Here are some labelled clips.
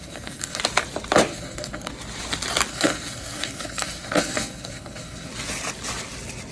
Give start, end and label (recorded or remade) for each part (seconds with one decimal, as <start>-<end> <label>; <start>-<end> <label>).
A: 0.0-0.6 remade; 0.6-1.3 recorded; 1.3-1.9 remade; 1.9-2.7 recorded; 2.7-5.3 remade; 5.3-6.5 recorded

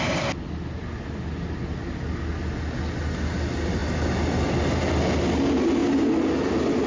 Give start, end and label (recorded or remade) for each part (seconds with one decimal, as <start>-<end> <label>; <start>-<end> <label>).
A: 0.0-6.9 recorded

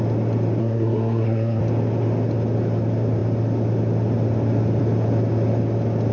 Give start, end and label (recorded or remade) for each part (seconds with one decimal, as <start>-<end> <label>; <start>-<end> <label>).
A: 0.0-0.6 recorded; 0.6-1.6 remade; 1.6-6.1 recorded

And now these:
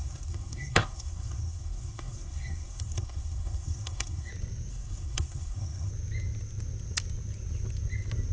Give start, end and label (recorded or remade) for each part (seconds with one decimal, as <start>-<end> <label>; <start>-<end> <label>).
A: 0.0-4.3 remade; 4.3-4.7 recorded; 4.7-5.9 remade; 5.9-8.3 recorded

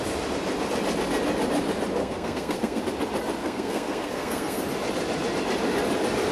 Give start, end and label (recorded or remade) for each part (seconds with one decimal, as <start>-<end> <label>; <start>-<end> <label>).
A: 0.0-2.0 recorded; 2.0-2.8 remade; 2.8-3.4 recorded; 3.4-4.6 remade; 4.6-6.3 recorded

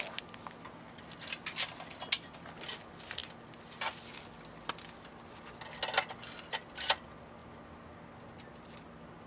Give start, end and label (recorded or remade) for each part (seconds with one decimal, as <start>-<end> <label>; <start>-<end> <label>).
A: 0.0-9.3 recorded

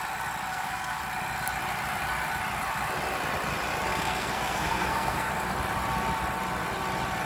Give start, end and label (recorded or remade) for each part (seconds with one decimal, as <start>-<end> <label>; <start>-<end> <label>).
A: 0.0-0.5 recorded; 0.5-1.0 remade; 1.0-3.9 recorded; 3.9-5.3 remade; 5.3-7.3 recorded

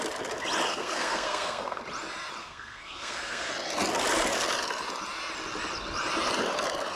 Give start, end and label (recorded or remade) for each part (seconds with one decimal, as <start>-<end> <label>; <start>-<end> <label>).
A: 0.0-0.7 recorded; 0.7-1.8 remade; 1.8-2.4 recorded; 2.4-3.5 remade; 3.5-7.0 recorded